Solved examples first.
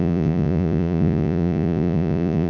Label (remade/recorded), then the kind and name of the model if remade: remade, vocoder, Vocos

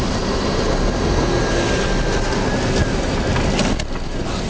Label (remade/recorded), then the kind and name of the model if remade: recorded